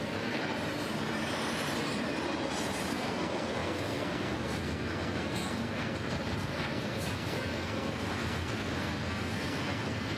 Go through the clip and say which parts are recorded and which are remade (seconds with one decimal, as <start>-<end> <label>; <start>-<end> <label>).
0.0-0.4 remade; 0.4-2.9 recorded; 2.9-10.2 remade

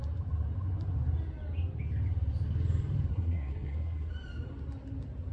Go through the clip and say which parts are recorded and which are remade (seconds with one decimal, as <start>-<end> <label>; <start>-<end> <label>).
0.0-3.1 recorded; 3.1-4.1 remade; 4.1-5.3 recorded

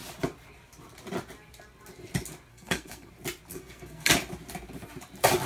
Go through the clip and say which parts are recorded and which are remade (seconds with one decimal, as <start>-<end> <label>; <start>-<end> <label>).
0.0-2.5 recorded; 2.5-3.1 remade; 3.1-3.5 recorded; 3.5-4.1 remade; 4.1-5.5 recorded

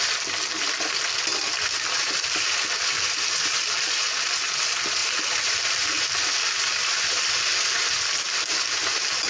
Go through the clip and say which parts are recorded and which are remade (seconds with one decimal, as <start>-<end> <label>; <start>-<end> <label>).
0.0-9.3 recorded

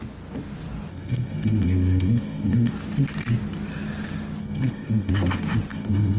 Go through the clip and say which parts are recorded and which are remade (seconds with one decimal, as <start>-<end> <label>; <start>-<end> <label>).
0.0-0.9 recorded; 0.9-2.7 remade; 2.7-4.4 recorded; 4.4-5.1 remade; 5.1-5.7 recorded; 5.7-6.2 remade

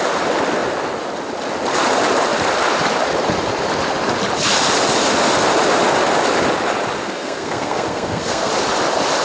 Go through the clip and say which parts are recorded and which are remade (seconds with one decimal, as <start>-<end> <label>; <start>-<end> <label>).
0.0-7.0 recorded; 7.0-8.5 remade; 8.5-9.2 recorded

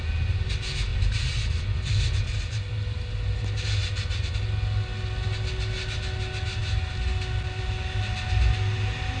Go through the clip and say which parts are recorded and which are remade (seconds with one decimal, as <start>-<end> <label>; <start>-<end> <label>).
0.0-9.2 recorded

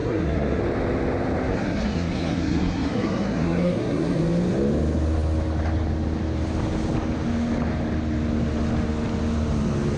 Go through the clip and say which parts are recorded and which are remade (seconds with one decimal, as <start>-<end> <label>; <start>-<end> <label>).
0.0-0.6 remade; 0.6-1.5 recorded; 1.5-4.2 remade; 4.2-10.0 recorded